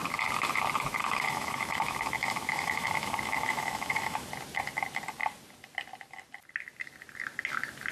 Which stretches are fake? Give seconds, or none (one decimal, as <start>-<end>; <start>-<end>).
1.0-4.3